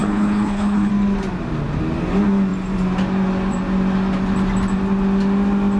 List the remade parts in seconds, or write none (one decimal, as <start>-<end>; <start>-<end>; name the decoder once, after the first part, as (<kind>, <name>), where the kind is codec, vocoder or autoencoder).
0.0-0.9 (codec, HILCodec)